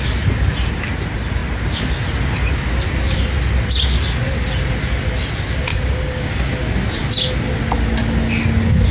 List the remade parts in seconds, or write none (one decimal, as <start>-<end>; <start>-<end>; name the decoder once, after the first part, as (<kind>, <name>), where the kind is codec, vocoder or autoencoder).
5.7-6.3 (codec, DAC)

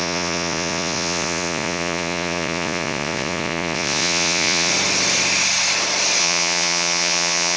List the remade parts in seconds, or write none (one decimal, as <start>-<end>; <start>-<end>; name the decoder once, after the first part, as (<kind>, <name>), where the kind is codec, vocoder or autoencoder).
0.0-4.7 (vocoder, Vocos); 6.2-7.6